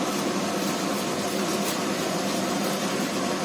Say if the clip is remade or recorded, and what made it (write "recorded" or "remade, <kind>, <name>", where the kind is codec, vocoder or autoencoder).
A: recorded